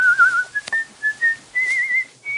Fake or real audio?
real